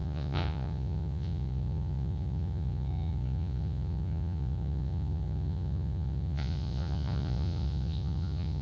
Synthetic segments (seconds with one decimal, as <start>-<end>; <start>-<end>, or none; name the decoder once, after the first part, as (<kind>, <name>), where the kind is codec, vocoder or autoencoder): 0.0-8.6 (vocoder, Vocos)